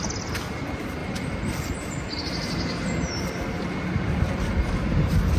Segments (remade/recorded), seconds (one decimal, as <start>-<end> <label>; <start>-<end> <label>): 0.0-1.0 recorded; 1.0-3.1 remade; 3.1-4.5 recorded; 4.5-5.4 remade